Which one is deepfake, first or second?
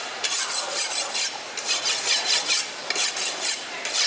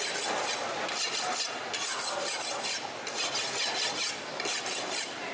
first